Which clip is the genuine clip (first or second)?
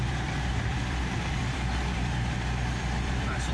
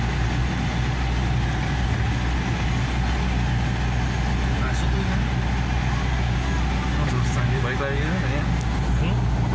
second